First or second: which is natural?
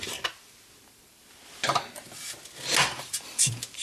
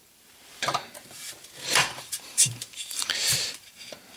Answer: first